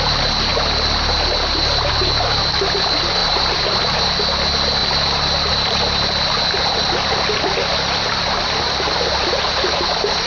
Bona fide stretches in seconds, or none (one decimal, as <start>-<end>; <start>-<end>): 0.0-3.2; 3.8-4.8; 5.5-10.3